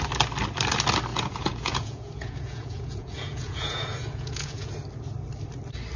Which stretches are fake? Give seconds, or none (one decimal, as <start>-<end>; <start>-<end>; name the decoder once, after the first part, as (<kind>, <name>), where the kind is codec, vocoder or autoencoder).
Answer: 1.1-4.7 (vocoder, Vocos)

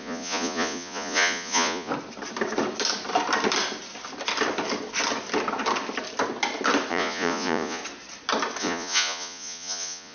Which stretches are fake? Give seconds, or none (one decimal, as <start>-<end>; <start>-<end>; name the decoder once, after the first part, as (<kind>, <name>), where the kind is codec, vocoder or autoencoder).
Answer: 0.0-1.9 (vocoder, Vocos); 6.9-7.8; 8.6-10.1

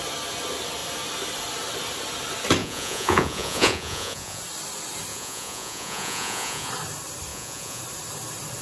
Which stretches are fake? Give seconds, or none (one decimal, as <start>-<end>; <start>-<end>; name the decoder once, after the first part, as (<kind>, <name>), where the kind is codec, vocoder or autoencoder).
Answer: 2.6-4.4 (vocoder, Vocos); 5.1-6.7; 7.3-7.8

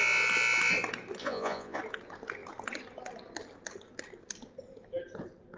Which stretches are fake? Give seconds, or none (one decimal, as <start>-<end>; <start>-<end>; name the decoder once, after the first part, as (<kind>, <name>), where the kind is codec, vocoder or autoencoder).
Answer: 1.2-1.8 (vocoder, Vocos)

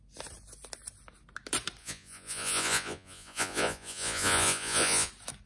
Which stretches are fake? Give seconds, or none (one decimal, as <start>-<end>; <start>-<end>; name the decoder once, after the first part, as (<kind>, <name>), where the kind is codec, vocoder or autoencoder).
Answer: 1.8-5.1 (vocoder, Vocos)

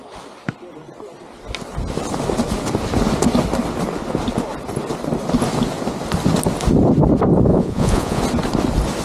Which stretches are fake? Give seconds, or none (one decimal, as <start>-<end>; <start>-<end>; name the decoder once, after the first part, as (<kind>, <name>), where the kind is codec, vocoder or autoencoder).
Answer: 7.5-8.2 (vocoder, Vocos)

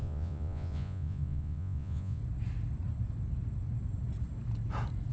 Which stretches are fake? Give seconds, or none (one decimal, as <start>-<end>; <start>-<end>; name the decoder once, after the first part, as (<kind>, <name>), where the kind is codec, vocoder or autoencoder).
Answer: 0.0-2.2 (vocoder, Vocos)